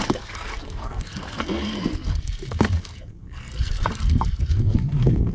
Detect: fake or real fake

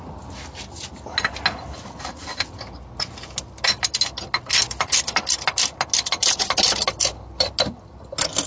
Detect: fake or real real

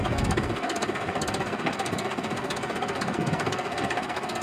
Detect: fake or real fake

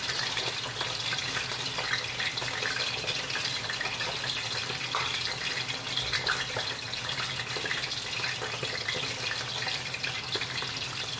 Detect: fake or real real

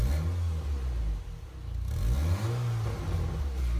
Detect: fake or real real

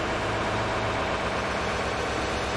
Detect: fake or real real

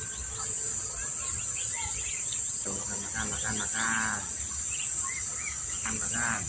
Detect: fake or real real